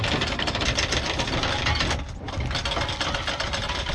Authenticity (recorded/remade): recorded